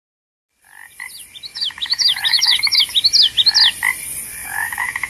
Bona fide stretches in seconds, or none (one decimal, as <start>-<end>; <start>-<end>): 0.0-1.5; 2.8-4.4